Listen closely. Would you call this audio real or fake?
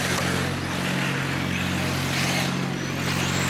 real